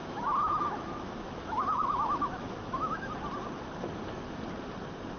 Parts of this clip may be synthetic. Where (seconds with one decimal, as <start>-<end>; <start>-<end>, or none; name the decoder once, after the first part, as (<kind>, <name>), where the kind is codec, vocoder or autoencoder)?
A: 0.0-3.1 (autoencoder, DAC-VAE)

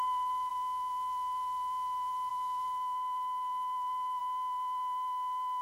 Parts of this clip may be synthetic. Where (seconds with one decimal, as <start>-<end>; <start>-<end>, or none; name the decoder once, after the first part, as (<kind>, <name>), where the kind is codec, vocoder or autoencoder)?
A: 0.0-0.5 (autoencoder, DAC-VAE); 2.3-4.2

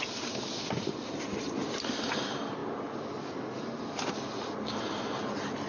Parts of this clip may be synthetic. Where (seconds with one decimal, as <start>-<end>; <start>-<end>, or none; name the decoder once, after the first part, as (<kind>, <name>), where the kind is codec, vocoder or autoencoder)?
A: none

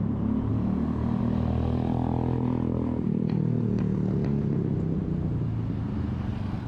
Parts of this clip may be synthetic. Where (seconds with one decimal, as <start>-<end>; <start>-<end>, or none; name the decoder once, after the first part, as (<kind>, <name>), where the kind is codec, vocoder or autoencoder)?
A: none

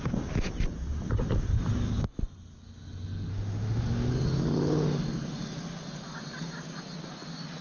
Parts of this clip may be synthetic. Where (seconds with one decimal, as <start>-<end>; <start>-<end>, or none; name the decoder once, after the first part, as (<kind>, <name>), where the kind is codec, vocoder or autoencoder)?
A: 3.3-4.1 (autoencoder, DAC-VAE)

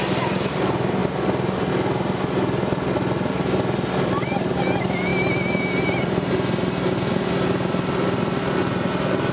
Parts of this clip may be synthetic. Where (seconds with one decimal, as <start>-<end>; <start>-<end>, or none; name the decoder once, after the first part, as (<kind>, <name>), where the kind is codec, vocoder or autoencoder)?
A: none

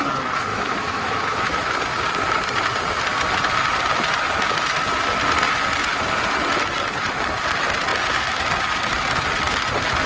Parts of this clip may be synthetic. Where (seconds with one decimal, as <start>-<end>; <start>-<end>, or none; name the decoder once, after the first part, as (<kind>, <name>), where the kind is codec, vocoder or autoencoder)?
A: 0.5-1.8 (autoencoder, DAC-VAE)

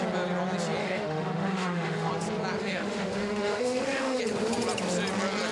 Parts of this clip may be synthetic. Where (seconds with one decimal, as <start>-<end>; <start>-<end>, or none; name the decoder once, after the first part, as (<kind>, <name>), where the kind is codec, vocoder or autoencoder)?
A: 0.8-2.1 (autoencoder, DAC-VAE); 2.6-4.2